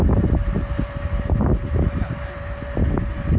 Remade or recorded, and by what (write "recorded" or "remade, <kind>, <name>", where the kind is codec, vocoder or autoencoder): recorded